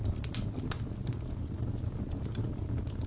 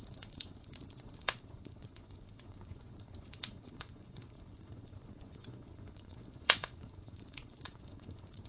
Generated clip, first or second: second